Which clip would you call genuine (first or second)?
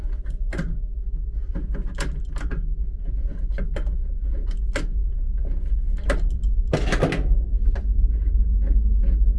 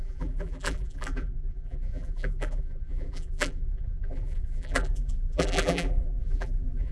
first